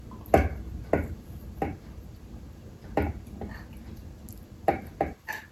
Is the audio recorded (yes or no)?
no